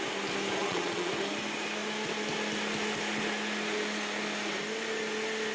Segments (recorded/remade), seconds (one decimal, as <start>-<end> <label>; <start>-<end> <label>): 0.0-0.6 recorded; 0.6-1.1 remade; 1.1-5.5 recorded